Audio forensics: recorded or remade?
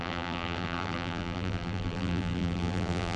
remade